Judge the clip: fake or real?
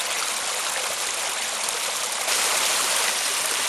real